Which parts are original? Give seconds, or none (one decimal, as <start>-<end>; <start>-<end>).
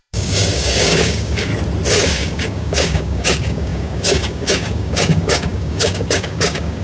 1.5-2.0